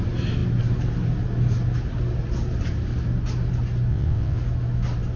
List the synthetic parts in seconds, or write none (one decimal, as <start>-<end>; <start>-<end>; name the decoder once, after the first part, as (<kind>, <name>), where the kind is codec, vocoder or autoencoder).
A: 3.9-4.4 (vocoder, WaveNeXt)

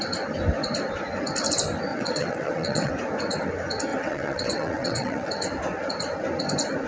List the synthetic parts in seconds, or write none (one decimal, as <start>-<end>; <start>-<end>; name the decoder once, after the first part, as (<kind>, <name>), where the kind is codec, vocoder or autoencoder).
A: 1.9-2.9 (vocoder, WaveNeXt); 3.9-5.3

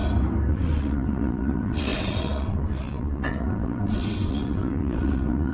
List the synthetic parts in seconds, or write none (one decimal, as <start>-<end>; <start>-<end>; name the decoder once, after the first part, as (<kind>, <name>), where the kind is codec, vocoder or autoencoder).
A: 0.5-5.5 (vocoder, WaveNeXt)

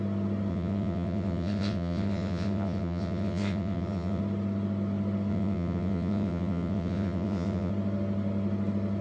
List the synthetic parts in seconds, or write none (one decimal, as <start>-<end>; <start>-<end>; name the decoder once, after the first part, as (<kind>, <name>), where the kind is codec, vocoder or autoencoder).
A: 0.5-4.2 (vocoder, WaveNeXt); 5.3-7.7

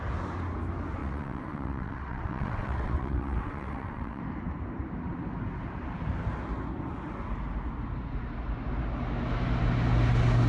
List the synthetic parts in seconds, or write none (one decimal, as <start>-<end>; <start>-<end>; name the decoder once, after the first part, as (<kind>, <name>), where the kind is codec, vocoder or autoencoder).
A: 1.0-4.2 (vocoder, WaveNeXt)